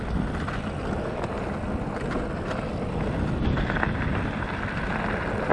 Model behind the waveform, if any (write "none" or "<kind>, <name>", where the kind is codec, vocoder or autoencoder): none